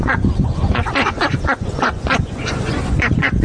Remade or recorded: remade